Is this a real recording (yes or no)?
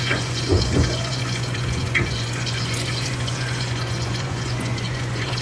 no